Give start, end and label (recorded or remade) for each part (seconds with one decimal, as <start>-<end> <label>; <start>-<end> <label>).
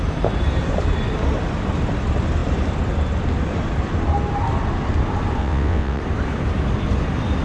0.0-5.4 recorded; 5.4-6.0 remade; 6.0-7.4 recorded